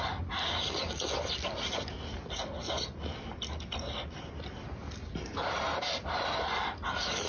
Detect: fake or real real